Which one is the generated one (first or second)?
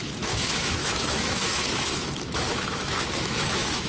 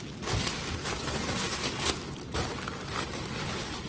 first